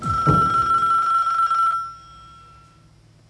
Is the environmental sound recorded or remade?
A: recorded